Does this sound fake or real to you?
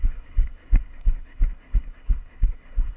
fake